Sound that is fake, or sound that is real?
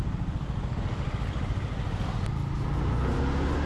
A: real